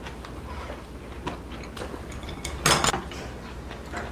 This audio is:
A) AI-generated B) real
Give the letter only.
B